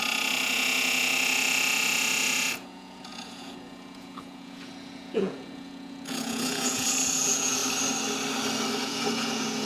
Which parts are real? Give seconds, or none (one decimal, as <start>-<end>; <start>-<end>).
7.6-8.8